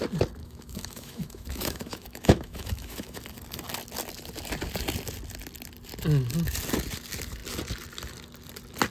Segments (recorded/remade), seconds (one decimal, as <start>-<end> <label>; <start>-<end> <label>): 0.0-0.4 recorded; 0.4-3.2 remade; 3.2-8.9 recorded